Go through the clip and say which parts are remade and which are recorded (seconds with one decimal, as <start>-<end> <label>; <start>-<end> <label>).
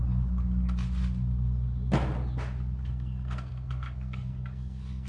0.0-2.8 recorded; 2.8-5.1 remade